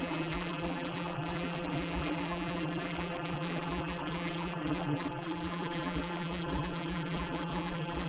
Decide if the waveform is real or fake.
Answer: fake